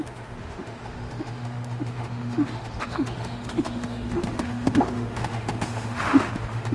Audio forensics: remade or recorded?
remade